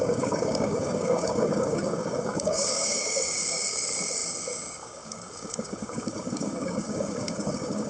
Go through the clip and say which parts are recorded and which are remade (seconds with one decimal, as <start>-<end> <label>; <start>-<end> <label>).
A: 0.0-7.9 remade